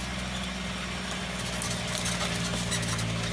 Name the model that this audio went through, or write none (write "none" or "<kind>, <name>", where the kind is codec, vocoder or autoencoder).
none